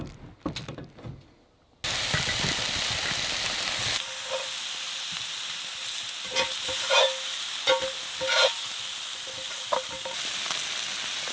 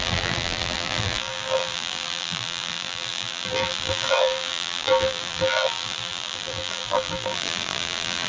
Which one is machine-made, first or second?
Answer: second